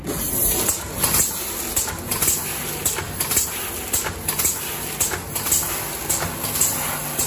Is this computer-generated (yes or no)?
no